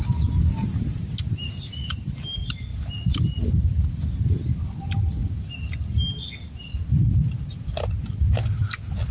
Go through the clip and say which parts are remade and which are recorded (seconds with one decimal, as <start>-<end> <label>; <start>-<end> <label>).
0.0-9.1 recorded